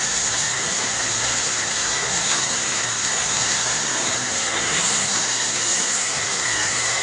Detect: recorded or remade remade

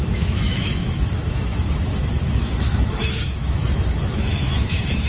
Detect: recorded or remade remade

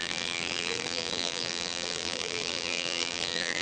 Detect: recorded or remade remade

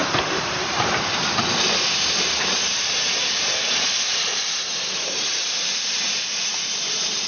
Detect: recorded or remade remade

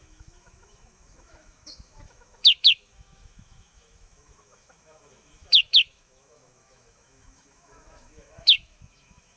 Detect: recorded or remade remade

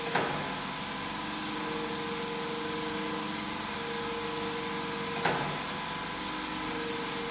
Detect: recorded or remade recorded